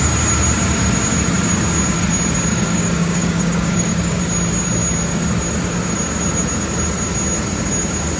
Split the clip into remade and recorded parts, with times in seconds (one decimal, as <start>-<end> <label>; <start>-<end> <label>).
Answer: 0.0-2.5 recorded; 2.5-4.2 remade; 4.2-8.2 recorded